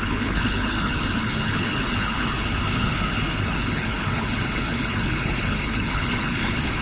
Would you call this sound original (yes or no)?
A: no